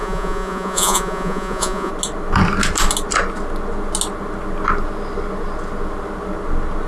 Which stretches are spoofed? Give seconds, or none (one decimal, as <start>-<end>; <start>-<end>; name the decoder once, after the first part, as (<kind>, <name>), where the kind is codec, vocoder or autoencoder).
0.0-1.9 (vocoder, Vocos)